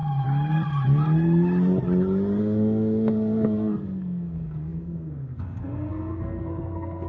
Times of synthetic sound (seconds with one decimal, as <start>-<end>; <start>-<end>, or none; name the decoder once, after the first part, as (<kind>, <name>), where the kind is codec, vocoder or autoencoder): 2.4-7.1 (codec, SNAC)

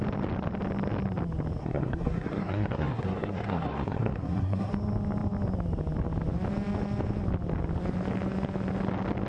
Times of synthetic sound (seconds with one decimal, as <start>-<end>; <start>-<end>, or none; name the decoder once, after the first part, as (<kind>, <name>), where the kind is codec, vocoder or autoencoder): 1.6-4.7 (codec, SNAC)